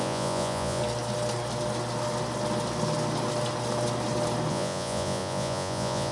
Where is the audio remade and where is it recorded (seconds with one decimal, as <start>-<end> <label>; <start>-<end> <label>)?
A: 0.0-0.8 remade; 0.8-4.5 recorded; 4.5-6.1 remade